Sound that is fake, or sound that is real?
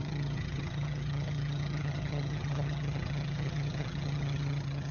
fake